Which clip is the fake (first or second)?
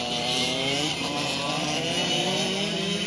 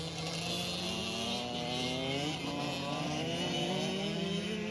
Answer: first